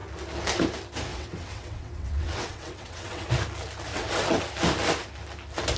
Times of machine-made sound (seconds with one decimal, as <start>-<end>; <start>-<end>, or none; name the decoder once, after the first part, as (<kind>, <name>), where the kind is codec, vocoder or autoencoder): 1.1-3.3 (vocoder, WaveNeXt); 3.9-4.4